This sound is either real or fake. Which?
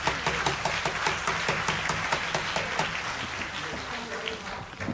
real